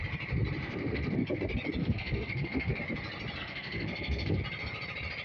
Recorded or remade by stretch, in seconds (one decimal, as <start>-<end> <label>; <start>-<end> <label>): 0.0-0.6 recorded; 0.6-1.4 remade; 1.4-1.8 recorded; 1.8-2.8 remade; 2.8-3.4 recorded; 3.4-4.4 remade; 4.4-5.2 recorded